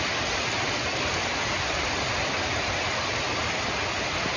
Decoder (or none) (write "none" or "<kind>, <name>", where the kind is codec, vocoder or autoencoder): none